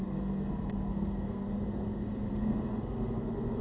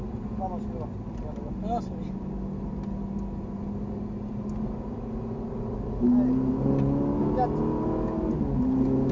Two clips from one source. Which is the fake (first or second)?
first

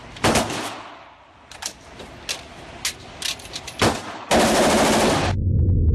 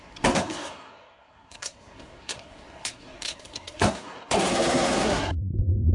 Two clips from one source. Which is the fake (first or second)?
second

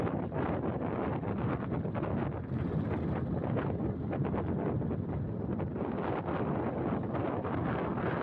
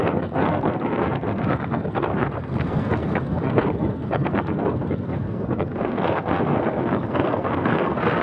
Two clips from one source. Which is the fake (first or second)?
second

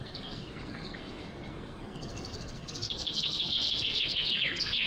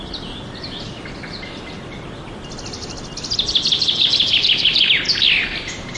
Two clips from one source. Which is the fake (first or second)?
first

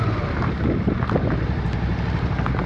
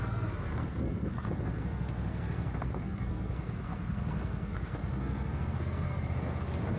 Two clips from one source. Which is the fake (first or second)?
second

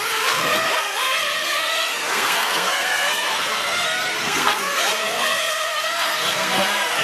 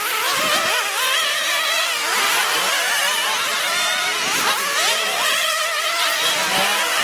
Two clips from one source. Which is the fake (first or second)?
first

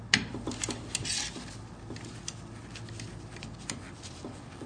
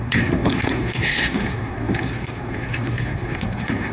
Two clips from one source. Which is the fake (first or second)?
second